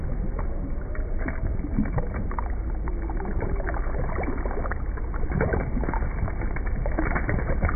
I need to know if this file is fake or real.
real